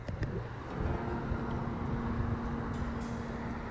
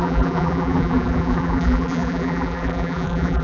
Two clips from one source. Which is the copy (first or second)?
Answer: second